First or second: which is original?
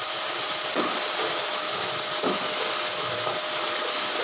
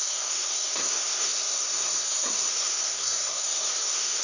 first